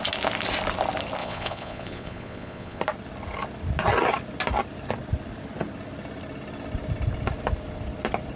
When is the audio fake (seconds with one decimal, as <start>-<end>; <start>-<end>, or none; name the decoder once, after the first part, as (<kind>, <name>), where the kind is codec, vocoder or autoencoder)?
1.2-2.8 (vocoder, Vocos)